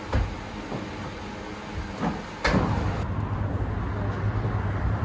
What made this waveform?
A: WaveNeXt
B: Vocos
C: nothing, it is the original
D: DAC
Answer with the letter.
C